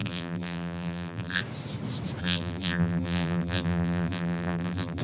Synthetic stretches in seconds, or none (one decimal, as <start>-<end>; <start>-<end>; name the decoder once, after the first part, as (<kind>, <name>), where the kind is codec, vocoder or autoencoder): 0.0-1.4 (vocoder, BigVGAN v2); 2.2-5.0